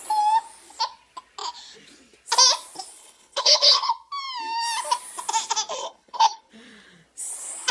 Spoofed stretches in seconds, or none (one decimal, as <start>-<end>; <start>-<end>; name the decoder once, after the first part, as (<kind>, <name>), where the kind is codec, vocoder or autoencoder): 2.9-3.9 (codec, HILCodec); 5.8-6.5